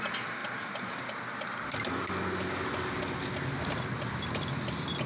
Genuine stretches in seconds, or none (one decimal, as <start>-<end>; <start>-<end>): 0.0-5.1